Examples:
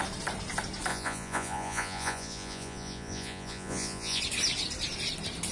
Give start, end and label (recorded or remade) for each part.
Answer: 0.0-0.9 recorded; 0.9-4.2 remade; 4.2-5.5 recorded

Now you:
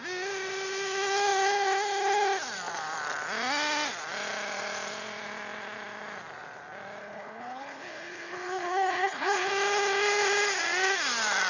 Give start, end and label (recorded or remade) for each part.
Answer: 0.0-7.0 recorded; 7.0-9.5 remade; 9.5-11.5 recorded

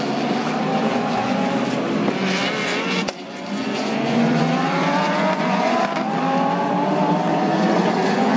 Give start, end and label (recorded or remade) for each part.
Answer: 0.0-0.7 recorded; 0.7-1.5 remade; 1.5-2.6 recorded; 2.6-5.8 remade; 5.8-7.3 recorded; 7.3-8.4 remade

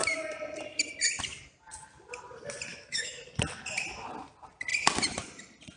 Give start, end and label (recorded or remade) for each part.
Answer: 0.0-2.7 recorded; 2.7-3.2 remade; 3.2-5.8 recorded